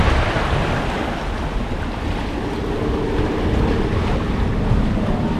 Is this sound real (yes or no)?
yes